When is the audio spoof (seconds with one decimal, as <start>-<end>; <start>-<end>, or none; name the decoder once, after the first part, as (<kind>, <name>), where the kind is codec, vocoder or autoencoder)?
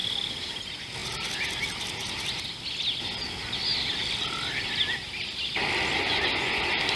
6.0-6.6 (vocoder, Vocos)